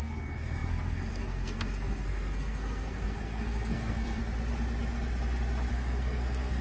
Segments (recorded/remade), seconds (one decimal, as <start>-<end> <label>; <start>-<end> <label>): 0.0-4.2 remade; 4.2-5.7 recorded; 5.7-6.6 remade